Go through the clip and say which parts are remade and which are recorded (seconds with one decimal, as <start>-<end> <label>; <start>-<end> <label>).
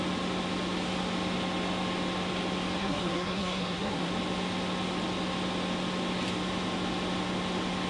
0.0-2.8 recorded; 2.8-4.1 remade; 4.1-7.9 recorded